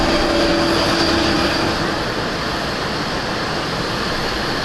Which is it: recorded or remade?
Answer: recorded